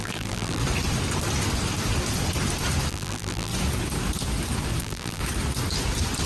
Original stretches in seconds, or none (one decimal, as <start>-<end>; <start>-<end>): 0.6-2.9; 3.5-4.8; 5.2-6.3

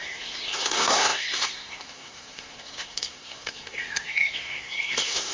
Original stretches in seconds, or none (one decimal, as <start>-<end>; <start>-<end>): none

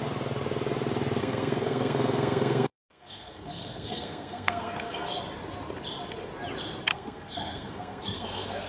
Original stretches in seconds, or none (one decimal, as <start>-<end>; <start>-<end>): 0.0-1.2; 5.2-6.9

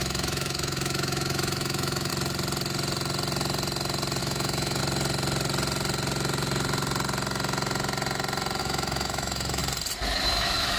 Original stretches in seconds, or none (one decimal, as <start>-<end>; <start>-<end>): 2.1-4.2; 4.8-8.6; 9.6-10.2

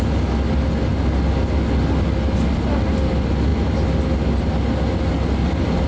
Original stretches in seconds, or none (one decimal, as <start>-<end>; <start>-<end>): 0.0-5.9

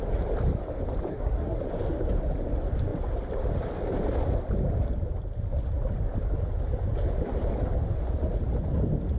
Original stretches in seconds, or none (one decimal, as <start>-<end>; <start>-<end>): 0.0-1.1; 1.6-9.2